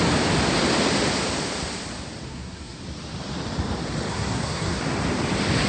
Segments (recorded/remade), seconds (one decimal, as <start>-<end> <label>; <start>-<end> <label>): 0.0-2.3 recorded; 2.3-2.8 remade; 2.8-4.1 recorded; 4.1-4.8 remade; 4.8-5.7 recorded